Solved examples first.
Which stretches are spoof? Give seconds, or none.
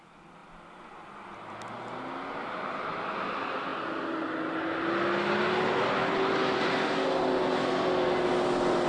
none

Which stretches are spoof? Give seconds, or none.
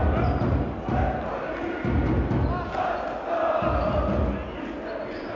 none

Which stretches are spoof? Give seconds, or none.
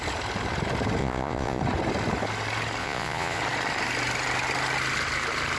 1.0-1.6 (vocoder, Vocos); 2.8-3.4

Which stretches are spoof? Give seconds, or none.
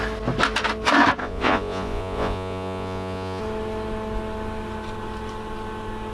1.2-3.4 (vocoder, Vocos)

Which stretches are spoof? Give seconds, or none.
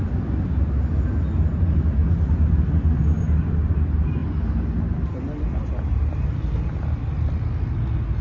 none